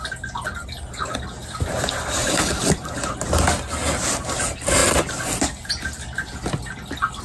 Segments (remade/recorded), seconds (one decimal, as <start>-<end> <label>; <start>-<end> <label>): 0.0-7.2 recorded